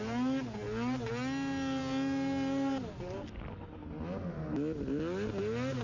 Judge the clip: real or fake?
real